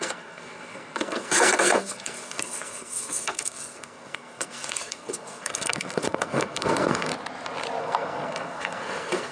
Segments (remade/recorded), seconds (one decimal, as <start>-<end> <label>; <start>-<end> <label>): 0.0-7.1 remade; 7.1-7.8 recorded; 7.8-9.3 remade